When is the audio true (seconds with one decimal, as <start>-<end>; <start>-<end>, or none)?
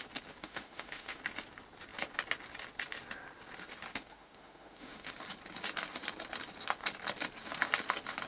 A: 0.0-0.4; 1.2-3.9; 5.1-8.3